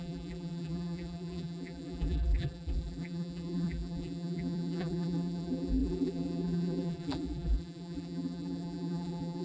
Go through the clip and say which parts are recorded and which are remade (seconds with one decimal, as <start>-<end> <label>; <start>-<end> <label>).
0.0-9.4 remade